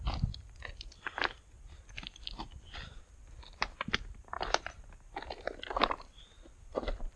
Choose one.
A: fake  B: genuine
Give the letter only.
B